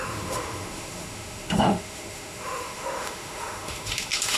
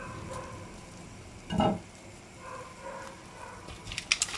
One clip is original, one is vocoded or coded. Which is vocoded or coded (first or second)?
first